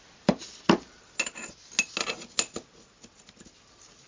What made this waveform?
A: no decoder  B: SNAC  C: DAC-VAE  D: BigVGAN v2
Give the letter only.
A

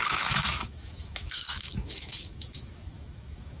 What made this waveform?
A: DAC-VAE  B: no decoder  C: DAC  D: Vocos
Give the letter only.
A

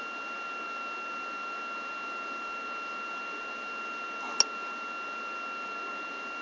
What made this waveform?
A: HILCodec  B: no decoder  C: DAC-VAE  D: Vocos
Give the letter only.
B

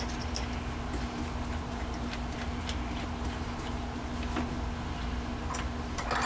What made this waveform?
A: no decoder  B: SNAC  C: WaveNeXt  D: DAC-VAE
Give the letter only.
A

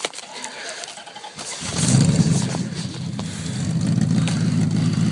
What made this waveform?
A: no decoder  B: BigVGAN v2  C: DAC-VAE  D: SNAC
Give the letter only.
A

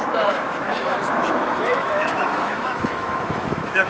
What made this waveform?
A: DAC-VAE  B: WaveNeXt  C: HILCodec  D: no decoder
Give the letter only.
A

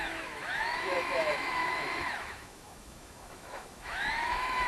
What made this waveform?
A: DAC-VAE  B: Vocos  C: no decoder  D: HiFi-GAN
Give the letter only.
A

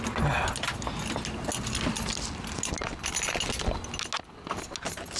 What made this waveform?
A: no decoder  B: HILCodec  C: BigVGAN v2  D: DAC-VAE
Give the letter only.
A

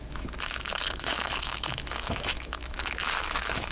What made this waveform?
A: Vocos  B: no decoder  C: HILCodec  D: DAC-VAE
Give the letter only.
D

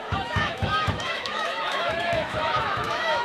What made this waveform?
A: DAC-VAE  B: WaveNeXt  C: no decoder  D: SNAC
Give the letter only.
A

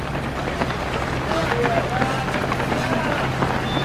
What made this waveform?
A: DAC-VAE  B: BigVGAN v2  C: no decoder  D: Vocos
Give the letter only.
C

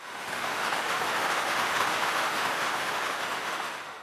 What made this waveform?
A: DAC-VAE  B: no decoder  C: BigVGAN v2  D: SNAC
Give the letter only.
A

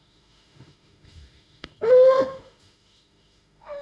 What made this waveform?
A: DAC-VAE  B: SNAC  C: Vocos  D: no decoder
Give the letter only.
A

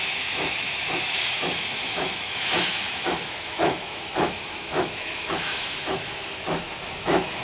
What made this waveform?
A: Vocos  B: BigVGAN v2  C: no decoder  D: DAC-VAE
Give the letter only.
D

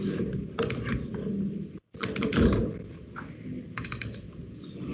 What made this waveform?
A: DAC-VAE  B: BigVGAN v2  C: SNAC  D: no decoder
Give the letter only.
D